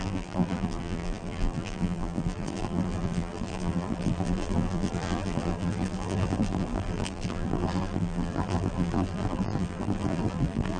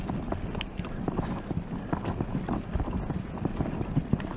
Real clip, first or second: second